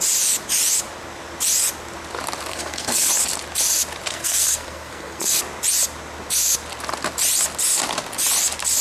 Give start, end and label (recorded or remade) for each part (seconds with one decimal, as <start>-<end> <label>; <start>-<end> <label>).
0.0-2.5 recorded; 2.5-3.1 remade; 3.1-4.1 recorded; 4.1-5.4 remade; 5.4-8.8 recorded